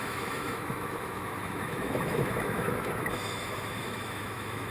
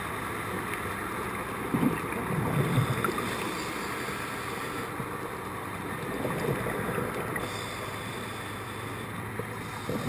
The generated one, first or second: first